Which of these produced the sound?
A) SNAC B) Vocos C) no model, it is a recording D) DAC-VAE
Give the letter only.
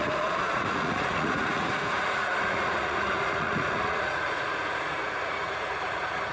B